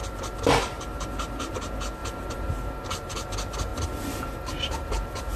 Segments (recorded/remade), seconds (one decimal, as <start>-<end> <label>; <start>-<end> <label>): 0.0-2.0 recorded; 2.0-2.5 remade; 2.5-5.4 recorded